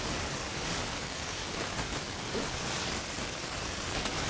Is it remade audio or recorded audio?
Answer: remade